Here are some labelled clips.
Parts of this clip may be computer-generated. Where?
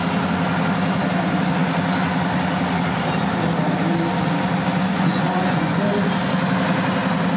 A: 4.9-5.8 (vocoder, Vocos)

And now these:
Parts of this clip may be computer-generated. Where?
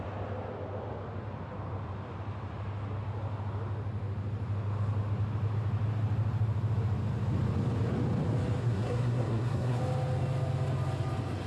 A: 8.6-9.8 (codec, SNAC)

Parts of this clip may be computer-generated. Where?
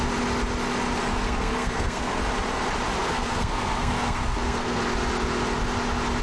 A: 1.0-2.2 (codec, SNAC); 3.0-4.8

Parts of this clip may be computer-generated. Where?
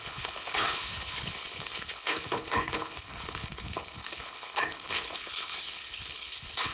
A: 0.0-6.7 (codec, HILCodec)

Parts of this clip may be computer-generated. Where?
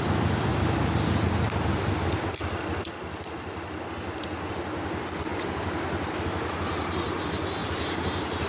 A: 5.3-6.1 (vocoder, BigVGAN v2); 7.6-8.5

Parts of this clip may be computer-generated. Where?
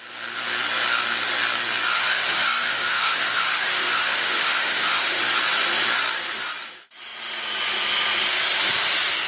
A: 1.9-5.2 (autoencoder, DAC-VAE)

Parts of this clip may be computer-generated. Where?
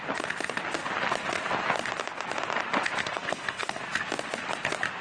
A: 3.0-3.8 (codec, SNAC)